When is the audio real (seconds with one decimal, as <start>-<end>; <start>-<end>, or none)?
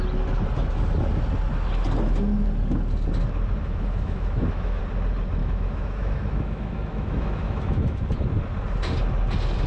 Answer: 0.0-3.6; 4.8-5.4; 8.0-9.7